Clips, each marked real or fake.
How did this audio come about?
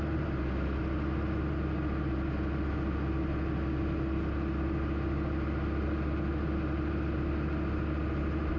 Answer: real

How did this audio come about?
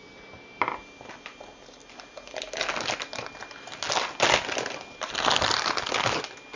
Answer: real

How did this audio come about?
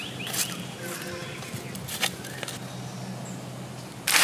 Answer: real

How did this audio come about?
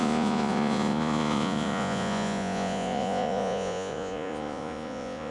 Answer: fake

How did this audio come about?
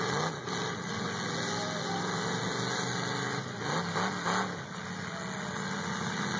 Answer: real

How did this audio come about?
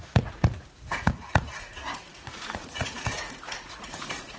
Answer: fake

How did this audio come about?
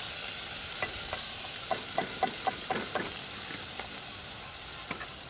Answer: real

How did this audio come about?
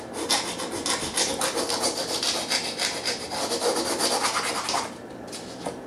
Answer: real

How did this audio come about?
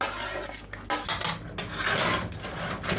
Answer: real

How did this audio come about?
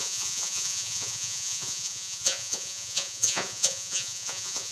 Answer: fake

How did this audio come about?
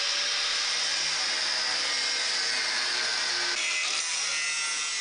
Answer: real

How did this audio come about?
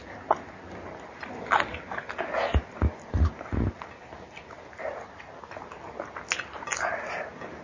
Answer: real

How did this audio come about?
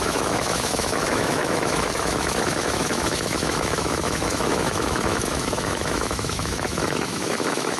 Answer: fake